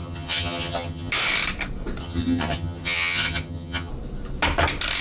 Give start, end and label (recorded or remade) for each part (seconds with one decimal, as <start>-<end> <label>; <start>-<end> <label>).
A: 0.0-1.1 remade; 1.1-2.0 recorded; 2.0-3.9 remade; 3.9-5.0 recorded